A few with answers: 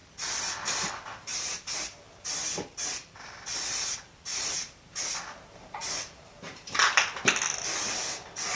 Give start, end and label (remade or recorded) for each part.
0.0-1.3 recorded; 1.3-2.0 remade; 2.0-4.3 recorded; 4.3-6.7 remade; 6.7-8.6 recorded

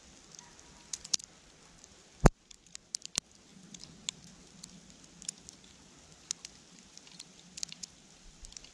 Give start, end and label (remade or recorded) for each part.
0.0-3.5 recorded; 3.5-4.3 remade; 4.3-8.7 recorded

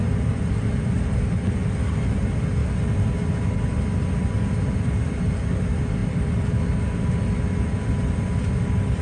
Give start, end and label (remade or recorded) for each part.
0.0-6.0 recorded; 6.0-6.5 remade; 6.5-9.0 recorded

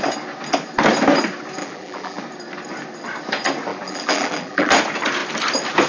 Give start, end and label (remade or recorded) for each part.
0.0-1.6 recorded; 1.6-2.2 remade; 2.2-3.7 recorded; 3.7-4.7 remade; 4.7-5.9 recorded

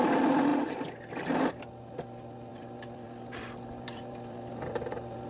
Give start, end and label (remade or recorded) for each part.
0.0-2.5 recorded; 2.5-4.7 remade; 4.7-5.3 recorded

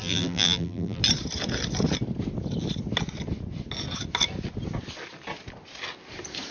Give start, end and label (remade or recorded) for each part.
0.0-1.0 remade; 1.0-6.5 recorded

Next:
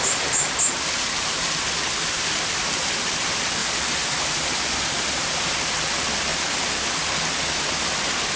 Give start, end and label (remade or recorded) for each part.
0.0-3.6 recorded; 3.6-4.6 remade; 4.6-6.3 recorded; 6.3-7.2 remade; 7.2-8.4 recorded